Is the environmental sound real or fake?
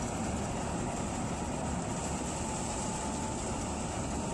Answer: real